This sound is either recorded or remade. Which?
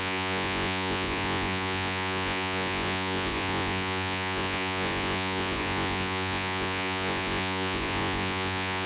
remade